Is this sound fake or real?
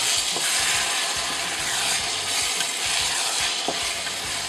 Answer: real